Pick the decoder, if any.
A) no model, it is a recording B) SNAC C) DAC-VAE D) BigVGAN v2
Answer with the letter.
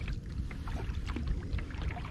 A